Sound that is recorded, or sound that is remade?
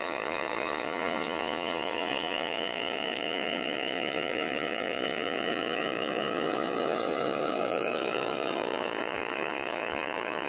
remade